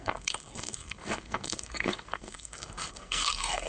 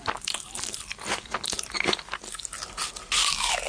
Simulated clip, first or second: first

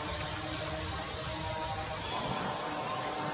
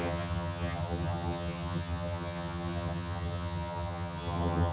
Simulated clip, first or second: second